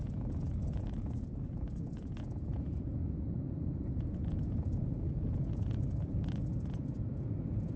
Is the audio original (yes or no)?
no